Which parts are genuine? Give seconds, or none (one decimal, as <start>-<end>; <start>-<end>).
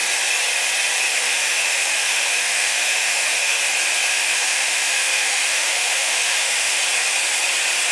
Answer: 0.0-1.1; 3.6-4.1; 6.8-7.9